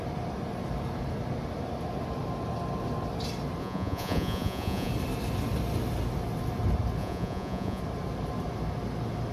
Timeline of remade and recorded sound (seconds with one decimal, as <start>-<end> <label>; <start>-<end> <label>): 0.0-3.6 recorded; 3.6-4.9 remade; 4.9-7.0 recorded; 7.0-7.8 remade; 7.8-9.3 recorded